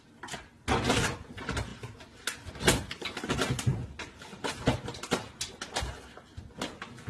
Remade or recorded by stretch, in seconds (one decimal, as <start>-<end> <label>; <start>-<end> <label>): 0.0-7.1 recorded